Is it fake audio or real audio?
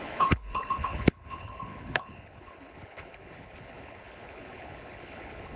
fake